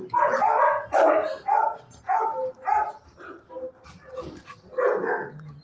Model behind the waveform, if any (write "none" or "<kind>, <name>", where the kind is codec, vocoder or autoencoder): none